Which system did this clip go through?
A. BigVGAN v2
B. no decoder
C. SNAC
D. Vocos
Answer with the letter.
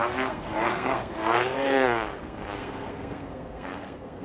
C